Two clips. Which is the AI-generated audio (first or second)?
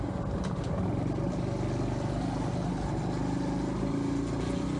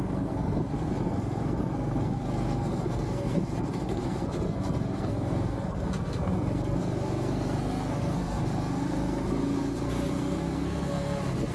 second